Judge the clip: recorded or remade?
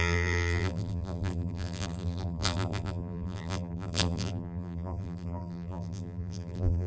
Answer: remade